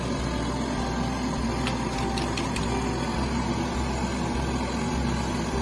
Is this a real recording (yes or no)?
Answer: yes